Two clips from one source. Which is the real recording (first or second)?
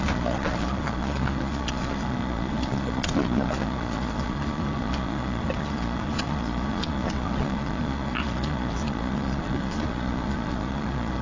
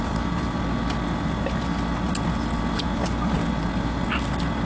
second